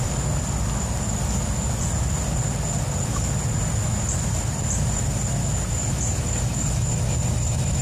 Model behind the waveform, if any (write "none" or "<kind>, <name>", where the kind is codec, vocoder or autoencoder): none